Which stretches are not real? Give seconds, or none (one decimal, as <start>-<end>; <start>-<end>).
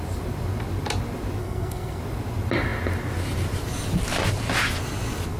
1.4-2.0